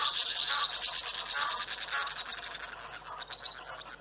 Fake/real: real